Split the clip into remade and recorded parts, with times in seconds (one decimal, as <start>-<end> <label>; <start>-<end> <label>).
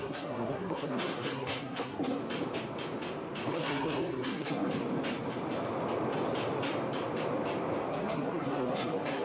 0.0-2.2 remade; 2.2-3.5 recorded; 3.5-4.8 remade; 4.8-7.9 recorded; 7.9-9.2 remade